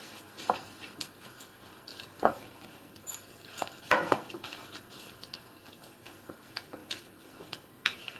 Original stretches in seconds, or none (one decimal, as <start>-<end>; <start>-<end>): none